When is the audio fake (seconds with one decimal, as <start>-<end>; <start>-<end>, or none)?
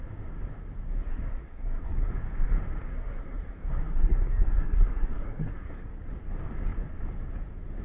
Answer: 1.0-2.1; 2.9-5.9